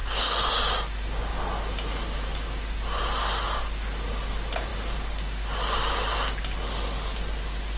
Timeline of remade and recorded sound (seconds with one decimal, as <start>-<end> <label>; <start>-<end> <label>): 0.0-7.8 recorded